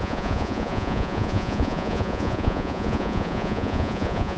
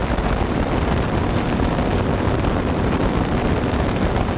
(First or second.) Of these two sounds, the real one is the second